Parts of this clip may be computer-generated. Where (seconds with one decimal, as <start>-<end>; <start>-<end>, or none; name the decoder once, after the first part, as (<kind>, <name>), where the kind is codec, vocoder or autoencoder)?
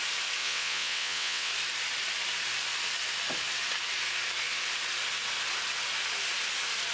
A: 0.4-1.5 (vocoder, WaveNeXt)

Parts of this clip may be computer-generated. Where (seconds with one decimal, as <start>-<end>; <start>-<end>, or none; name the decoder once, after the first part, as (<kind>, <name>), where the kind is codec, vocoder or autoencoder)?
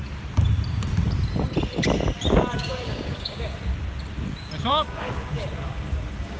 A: 2.5-3.7 (codec, DAC); 4.7-6.4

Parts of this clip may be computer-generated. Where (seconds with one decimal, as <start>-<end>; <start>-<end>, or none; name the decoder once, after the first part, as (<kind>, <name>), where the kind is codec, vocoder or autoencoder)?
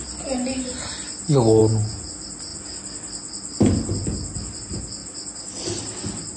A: none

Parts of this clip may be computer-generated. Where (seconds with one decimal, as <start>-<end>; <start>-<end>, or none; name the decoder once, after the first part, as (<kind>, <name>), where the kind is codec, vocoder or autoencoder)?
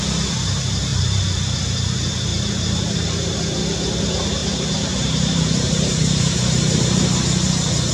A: 4.4-6.8 (vocoder, BigVGAN v2)